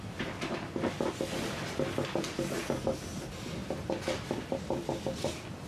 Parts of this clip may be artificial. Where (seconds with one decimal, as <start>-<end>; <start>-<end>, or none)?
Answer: 3.6-5.7